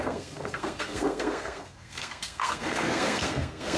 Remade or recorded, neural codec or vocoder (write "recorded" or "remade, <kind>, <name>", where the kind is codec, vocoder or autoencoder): remade, codec, SNAC